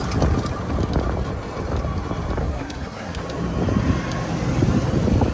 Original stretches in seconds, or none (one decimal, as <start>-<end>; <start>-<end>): 0.0-2.4; 3.2-5.3